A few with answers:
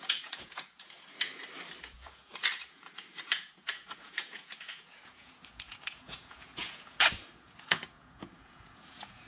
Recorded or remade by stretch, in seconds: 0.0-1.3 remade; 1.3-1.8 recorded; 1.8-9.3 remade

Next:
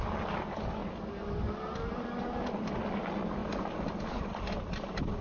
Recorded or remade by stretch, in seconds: 0.0-5.2 recorded

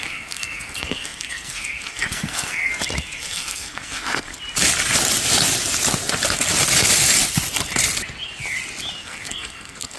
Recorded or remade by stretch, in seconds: 0.0-2.7 remade; 2.7-3.2 recorded; 3.2-4.3 remade; 4.3-9.0 recorded; 9.0-10.0 remade

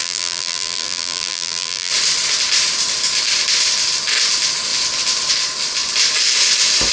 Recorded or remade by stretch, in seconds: 0.0-1.9 remade; 1.9-6.9 recorded

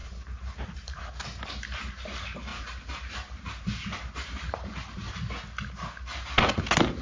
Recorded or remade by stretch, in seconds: 0.0-1.0 remade; 1.0-2.5 recorded; 2.5-5.1 remade; 5.1-7.0 recorded

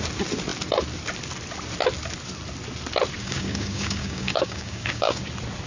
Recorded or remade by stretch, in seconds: 0.0-3.2 recorded; 3.2-5.2 remade; 5.2-5.7 recorded

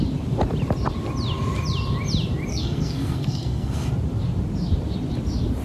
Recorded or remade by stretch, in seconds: 0.0-2.5 recorded; 2.5-3.9 remade; 3.9-5.6 recorded

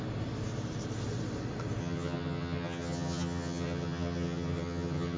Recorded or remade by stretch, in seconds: 0.0-1.8 recorded; 1.8-5.2 remade